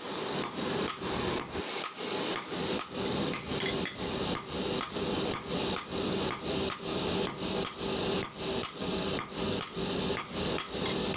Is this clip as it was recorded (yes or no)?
yes